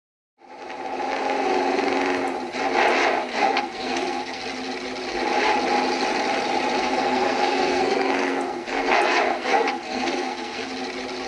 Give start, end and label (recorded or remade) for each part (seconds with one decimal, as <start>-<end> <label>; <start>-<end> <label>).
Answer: 0.0-3.3 recorded; 3.3-4.4 remade; 4.4-6.8 recorded; 6.8-10.7 remade; 10.7-11.3 recorded